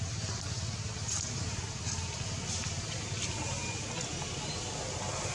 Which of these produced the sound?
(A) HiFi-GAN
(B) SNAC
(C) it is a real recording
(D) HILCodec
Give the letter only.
C